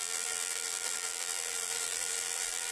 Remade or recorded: remade